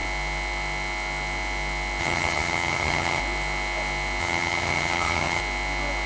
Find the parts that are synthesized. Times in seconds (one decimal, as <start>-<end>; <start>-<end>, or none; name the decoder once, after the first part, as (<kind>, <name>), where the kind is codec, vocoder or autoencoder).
2.0-3.2 (vocoder, HiFi-GAN); 4.2-5.4